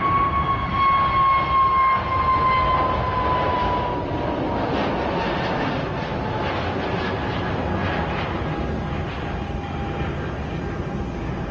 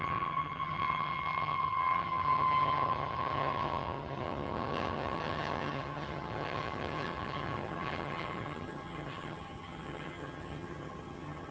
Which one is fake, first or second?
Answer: second